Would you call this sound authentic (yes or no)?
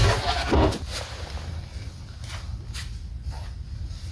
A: yes